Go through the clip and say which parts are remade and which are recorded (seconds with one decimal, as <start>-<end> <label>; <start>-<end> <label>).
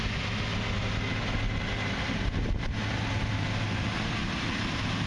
0.0-5.1 recorded